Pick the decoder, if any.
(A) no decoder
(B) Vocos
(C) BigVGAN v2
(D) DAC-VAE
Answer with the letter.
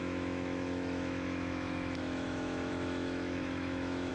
D